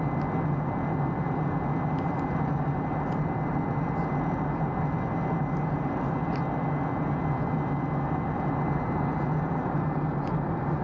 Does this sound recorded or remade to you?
recorded